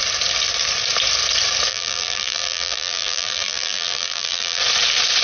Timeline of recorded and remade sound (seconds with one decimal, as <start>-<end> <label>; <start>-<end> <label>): 0.0-1.7 recorded; 1.7-4.6 remade; 4.6-5.2 recorded